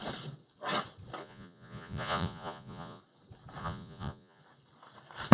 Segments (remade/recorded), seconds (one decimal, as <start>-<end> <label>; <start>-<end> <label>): 0.0-1.2 recorded; 1.2-3.0 remade; 3.0-3.6 recorded; 3.6-4.4 remade; 4.4-5.3 recorded